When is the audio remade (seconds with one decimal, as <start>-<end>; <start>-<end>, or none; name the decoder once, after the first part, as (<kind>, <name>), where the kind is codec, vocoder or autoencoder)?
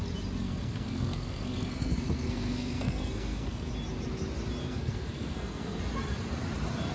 0.4-3.7 (codec, SNAC); 4.6-5.8